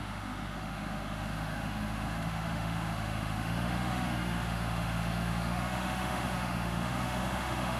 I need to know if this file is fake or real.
fake